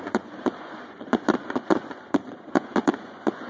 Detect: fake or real fake